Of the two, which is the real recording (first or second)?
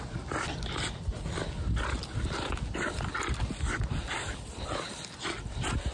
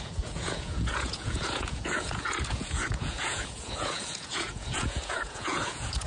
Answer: first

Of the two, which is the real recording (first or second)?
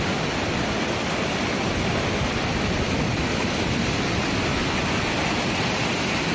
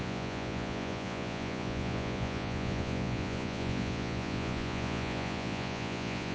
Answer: first